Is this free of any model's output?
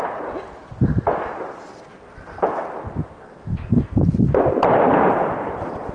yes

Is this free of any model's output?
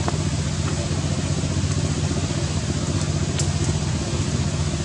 yes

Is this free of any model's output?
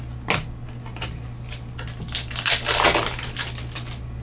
yes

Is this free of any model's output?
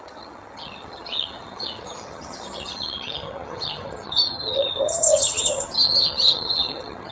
no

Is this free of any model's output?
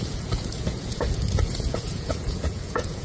no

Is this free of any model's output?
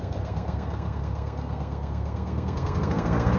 no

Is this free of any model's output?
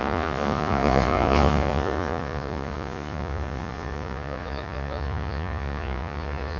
no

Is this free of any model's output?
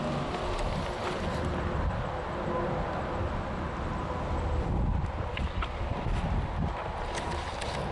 yes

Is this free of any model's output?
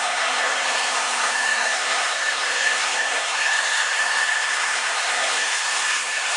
no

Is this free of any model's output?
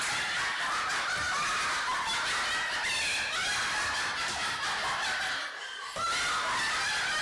yes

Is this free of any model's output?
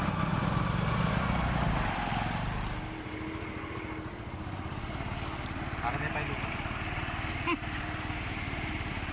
yes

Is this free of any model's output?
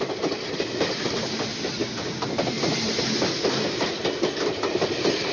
yes